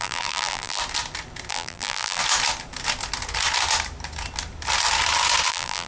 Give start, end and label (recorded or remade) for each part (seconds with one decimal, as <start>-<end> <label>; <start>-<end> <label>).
0.0-0.8 remade; 0.8-1.5 recorded; 1.5-2.2 remade; 2.2-5.5 recorded; 5.5-5.9 remade

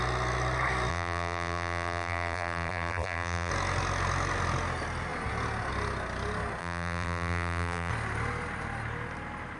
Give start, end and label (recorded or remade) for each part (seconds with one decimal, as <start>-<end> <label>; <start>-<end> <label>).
0.0-0.9 recorded; 0.9-3.5 remade; 3.5-6.6 recorded; 6.6-7.9 remade; 7.9-9.6 recorded

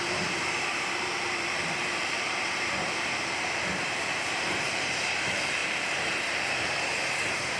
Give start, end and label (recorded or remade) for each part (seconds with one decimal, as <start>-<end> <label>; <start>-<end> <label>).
0.0-7.6 remade

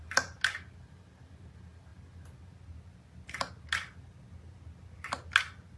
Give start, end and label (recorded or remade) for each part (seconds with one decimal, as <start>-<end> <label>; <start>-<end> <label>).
0.0-5.8 recorded

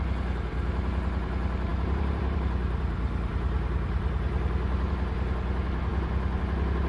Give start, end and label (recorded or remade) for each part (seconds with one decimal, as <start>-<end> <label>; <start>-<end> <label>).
0.0-1.7 recorded; 1.7-4.9 remade; 4.9-6.9 recorded

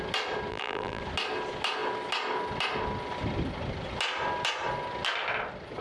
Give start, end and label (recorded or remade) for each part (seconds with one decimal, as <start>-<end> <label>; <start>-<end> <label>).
0.0-0.5 recorded; 0.5-1.0 remade; 1.0-5.8 recorded

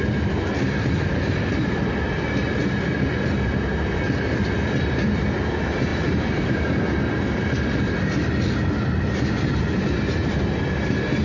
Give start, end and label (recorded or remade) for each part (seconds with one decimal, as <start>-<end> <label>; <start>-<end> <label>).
0.0-5.9 recorded; 5.9-6.6 remade; 6.6-11.2 recorded